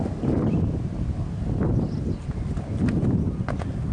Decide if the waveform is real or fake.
real